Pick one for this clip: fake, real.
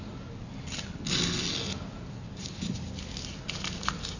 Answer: real